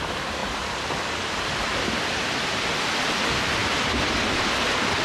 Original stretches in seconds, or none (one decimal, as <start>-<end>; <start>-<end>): 0.0-0.4; 2.8-3.6